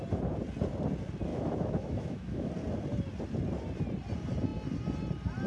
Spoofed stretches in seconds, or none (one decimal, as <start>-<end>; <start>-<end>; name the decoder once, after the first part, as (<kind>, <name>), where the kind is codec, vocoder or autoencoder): 1.3-2.5 (autoencoder, DAC-VAE)

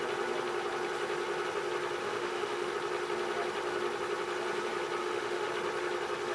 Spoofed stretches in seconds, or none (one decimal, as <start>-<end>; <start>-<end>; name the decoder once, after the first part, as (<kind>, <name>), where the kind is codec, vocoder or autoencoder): 2.0-2.7 (autoencoder, DAC-VAE); 5.0-5.5

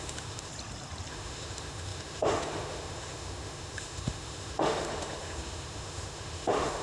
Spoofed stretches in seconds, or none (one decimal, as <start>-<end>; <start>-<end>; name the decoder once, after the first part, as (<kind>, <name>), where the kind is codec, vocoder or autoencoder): 0.0-0.5 (autoencoder, DAC-VAE); 1.1-6.8

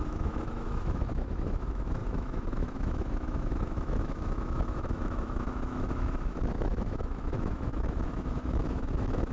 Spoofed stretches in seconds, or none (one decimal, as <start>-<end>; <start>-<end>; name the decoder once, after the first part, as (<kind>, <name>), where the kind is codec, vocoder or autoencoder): 0.0-9.3 (autoencoder, DAC-VAE)

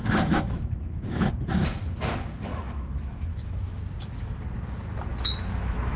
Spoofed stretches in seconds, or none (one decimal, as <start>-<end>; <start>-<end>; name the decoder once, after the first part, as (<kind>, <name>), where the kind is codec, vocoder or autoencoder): 0.0-1.3 (autoencoder, DAC-VAE); 2.5-3.8; 5.1-6.0

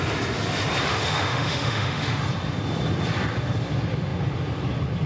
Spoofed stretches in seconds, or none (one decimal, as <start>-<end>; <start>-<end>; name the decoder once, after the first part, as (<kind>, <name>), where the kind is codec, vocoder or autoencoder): 0.9-2.2 (autoencoder, DAC-VAE)